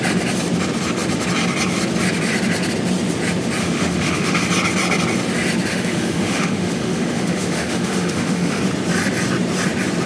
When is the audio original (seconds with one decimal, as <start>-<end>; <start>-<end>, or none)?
0.0-3.6; 4.5-5.7; 8.6-10.1